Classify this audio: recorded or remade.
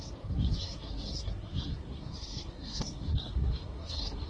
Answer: remade